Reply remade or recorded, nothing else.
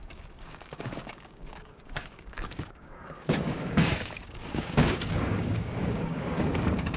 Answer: remade